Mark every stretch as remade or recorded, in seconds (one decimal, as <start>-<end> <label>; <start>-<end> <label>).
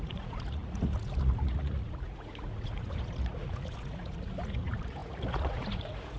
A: 0.0-6.2 remade